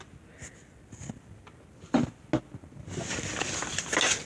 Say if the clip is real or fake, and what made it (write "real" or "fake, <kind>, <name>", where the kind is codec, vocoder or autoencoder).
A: real